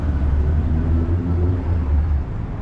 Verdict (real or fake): fake